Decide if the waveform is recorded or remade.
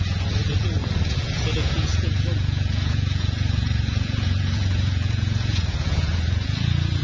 remade